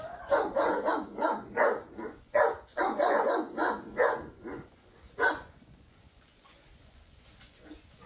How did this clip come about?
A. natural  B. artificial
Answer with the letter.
B